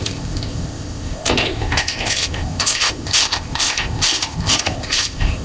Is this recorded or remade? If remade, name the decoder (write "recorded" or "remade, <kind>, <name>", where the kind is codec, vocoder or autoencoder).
remade, codec, ZipCodec